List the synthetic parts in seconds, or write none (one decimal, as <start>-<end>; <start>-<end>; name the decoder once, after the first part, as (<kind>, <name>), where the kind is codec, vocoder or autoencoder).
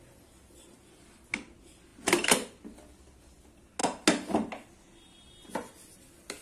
none